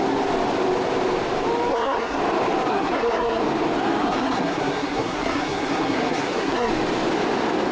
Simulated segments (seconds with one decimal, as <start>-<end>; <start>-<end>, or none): 1.7-2.2; 2.7-3.4; 4.0-6.7